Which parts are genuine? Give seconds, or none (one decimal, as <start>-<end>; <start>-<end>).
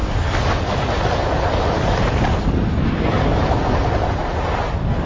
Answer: 0.5-1.2; 4.3-5.1